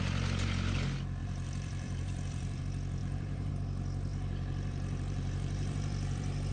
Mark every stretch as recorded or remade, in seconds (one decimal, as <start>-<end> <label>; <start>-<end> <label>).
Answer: 0.0-1.2 recorded; 1.2-2.6 remade; 2.6-3.0 recorded; 3.0-3.5 remade; 3.5-4.1 recorded; 4.1-6.5 remade

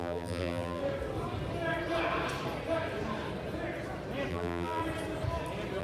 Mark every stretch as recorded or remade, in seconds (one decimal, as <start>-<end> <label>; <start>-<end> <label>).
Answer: 0.0-0.8 remade; 0.8-4.3 recorded; 4.3-4.8 remade; 4.8-5.8 recorded